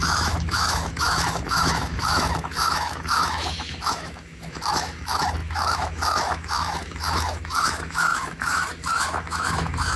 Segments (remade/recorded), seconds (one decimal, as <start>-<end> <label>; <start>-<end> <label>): 0.0-10.0 remade